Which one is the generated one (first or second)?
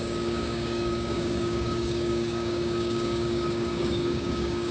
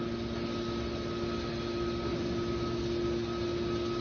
first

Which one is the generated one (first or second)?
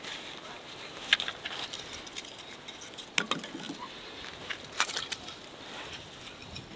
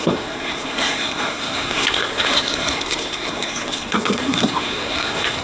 second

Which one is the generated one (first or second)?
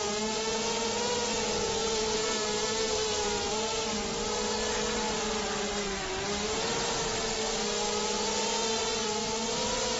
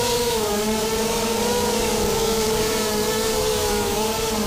second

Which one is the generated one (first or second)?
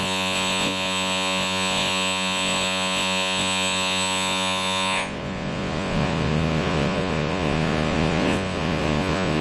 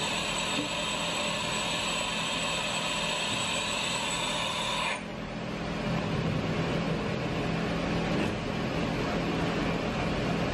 first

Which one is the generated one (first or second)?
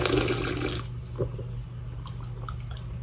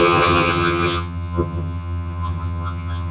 second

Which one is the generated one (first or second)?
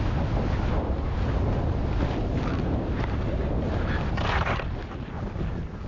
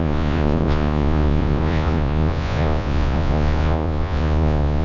second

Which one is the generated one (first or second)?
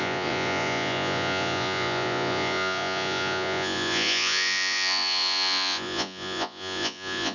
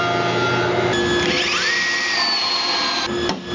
first